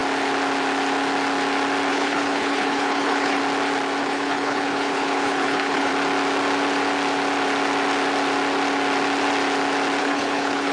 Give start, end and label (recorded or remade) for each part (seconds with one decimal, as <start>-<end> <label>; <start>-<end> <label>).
0.0-1.9 recorded; 1.9-3.4 remade; 3.4-4.0 recorded; 4.0-5.9 remade; 5.9-10.0 recorded; 10.0-10.7 remade